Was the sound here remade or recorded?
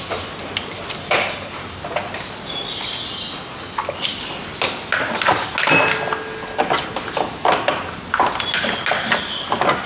recorded